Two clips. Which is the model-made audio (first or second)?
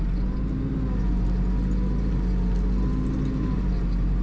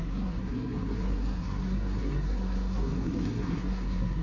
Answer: second